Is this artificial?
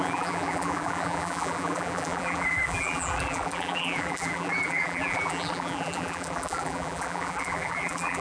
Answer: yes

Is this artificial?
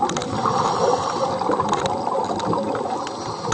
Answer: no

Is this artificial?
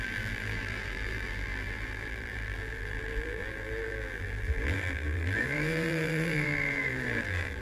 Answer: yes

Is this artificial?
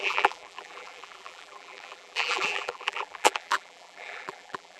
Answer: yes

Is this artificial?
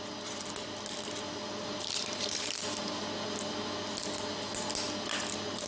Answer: no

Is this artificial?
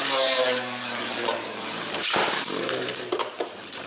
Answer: yes